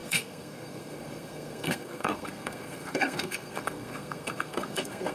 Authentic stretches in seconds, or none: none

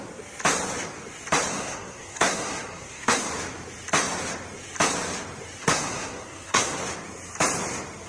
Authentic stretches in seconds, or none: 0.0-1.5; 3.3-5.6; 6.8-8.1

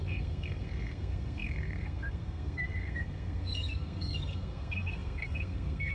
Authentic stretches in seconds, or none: none

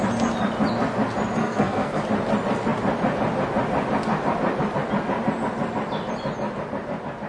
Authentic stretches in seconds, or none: 0.0-1.4; 2.0-7.3

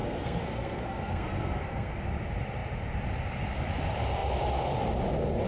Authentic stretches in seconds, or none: 2.1-5.5

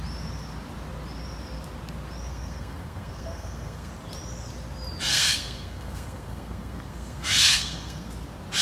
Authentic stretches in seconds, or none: 0.0-2.3; 3.9-5.1; 8.1-8.6